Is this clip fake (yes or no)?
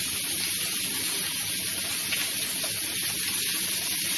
no